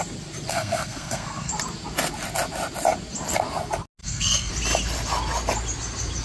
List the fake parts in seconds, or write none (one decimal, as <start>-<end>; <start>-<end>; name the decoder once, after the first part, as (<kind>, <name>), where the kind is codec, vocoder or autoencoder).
0.5-1.5 (codec, SNAC); 4.0-4.5